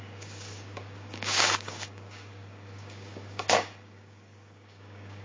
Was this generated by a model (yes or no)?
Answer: yes